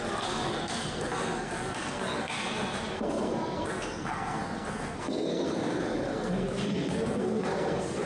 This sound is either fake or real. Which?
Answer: fake